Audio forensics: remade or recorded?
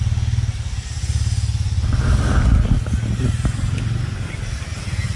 recorded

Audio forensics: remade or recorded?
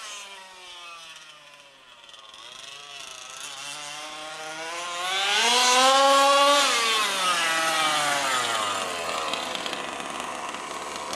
recorded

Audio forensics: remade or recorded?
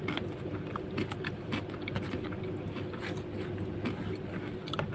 recorded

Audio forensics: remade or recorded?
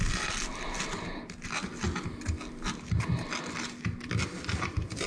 recorded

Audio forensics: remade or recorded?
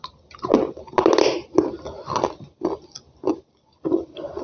recorded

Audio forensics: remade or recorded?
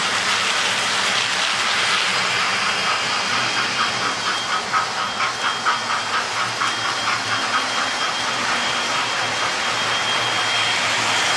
recorded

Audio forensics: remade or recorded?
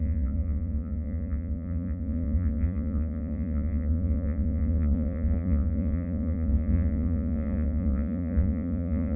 remade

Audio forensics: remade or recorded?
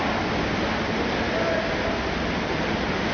recorded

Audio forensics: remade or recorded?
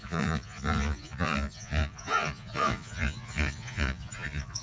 remade